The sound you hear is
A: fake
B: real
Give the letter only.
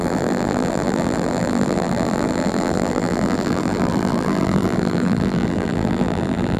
A